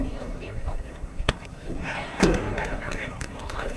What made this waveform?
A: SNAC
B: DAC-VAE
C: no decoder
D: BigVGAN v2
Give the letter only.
A